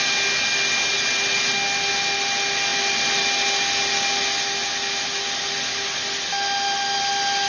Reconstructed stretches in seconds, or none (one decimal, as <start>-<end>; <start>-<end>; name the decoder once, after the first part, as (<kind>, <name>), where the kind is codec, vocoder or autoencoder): none